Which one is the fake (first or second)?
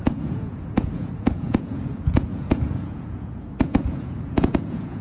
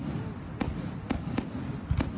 first